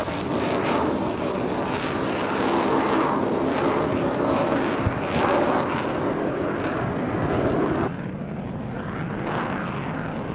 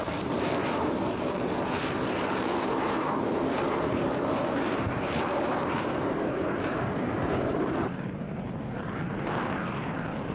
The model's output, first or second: second